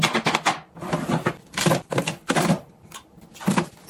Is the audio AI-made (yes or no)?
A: yes